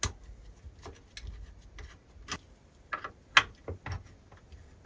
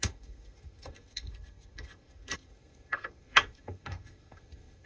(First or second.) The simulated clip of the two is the second